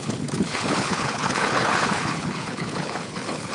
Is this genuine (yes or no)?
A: no